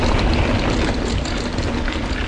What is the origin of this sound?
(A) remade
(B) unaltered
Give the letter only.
B